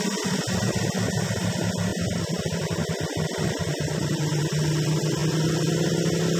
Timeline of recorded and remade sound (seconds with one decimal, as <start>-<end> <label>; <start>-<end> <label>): 0.0-3.6 recorded; 3.6-4.4 remade; 4.4-6.4 recorded